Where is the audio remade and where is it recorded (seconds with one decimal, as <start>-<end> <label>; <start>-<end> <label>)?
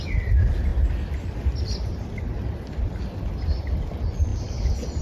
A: 0.0-5.0 recorded